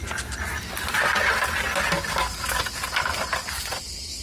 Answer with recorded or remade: recorded